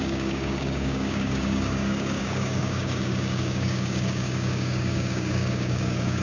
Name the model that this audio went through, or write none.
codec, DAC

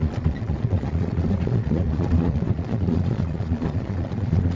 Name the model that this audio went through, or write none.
vocoder, Vocos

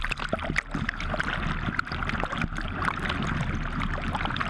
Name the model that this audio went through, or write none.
none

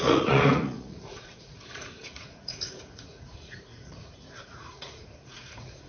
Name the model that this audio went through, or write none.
vocoder, Vocos